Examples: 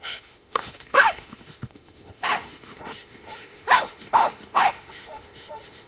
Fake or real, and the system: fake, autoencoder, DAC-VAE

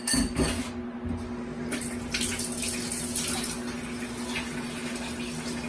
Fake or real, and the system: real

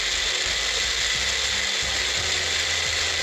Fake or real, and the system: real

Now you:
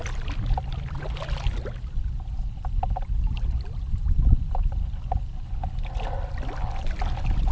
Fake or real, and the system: real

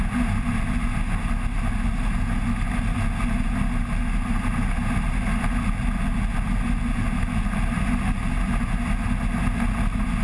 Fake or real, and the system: real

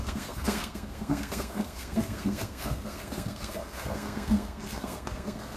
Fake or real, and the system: fake, codec, SNAC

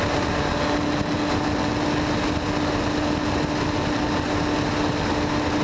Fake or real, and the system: real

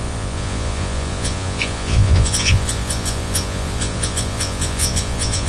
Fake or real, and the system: fake, vocoder, Vocos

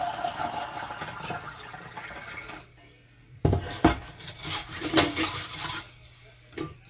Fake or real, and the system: real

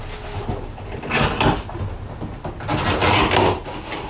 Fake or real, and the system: real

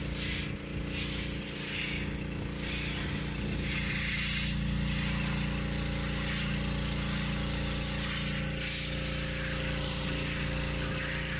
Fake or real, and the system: real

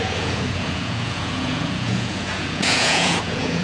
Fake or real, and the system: fake, vocoder, Vocos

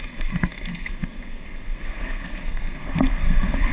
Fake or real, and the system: fake, codec, SNAC